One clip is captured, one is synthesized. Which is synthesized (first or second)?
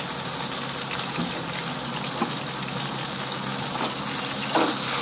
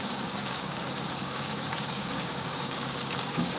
second